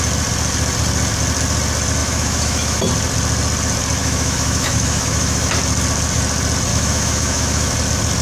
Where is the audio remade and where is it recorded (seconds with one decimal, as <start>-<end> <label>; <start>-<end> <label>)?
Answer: 0.0-2.0 recorded; 2.0-2.8 remade; 2.8-4.0 recorded; 4.0-5.5 remade; 5.5-6.7 recorded; 6.7-7.7 remade; 7.7-8.2 recorded